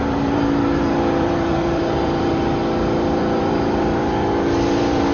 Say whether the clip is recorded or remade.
remade